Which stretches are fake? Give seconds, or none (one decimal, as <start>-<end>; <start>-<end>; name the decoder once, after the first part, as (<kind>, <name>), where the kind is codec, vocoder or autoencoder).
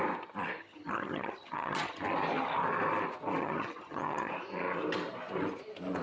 0.6-2.0 (vocoder, HiFi-GAN); 3.4-4.3